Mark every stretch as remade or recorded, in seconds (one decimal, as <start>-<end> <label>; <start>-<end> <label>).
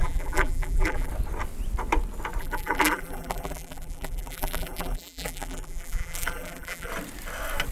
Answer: 0.0-1.1 remade; 1.1-2.4 recorded; 2.4-6.9 remade; 6.9-7.7 recorded